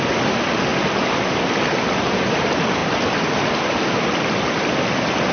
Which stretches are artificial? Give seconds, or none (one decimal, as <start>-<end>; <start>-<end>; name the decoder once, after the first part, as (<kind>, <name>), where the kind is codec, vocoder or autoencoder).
none